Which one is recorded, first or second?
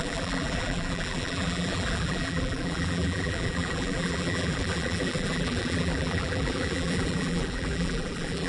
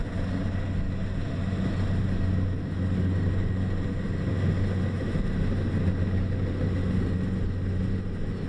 second